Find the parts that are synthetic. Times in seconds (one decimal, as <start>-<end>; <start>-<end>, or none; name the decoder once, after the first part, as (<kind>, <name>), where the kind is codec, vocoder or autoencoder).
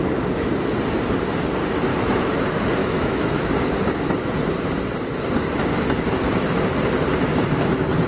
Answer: 1.9-2.4 (autoencoder, DAC-VAE); 2.8-3.5